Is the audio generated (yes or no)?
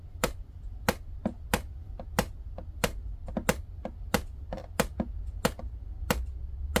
no